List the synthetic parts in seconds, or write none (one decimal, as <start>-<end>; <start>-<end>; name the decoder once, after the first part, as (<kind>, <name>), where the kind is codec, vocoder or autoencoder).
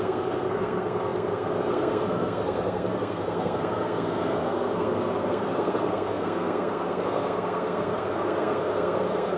0.0-9.4 (codec, SNAC)